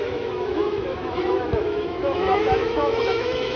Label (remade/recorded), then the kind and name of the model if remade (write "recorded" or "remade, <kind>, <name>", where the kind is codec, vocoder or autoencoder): remade, autoencoder, DAC-VAE